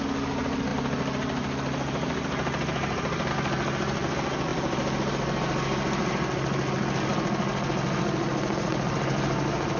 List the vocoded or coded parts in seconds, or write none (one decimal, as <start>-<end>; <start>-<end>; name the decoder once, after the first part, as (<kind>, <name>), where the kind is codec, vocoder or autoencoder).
none